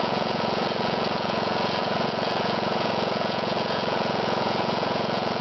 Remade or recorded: remade